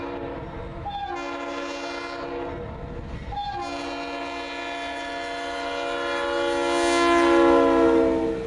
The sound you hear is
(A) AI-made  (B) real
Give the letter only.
B